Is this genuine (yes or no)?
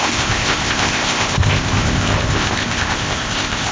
no